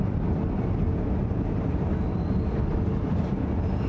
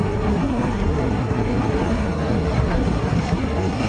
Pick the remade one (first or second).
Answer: second